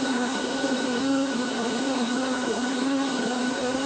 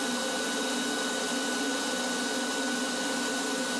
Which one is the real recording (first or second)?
second